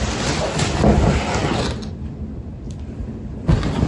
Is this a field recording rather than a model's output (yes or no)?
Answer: yes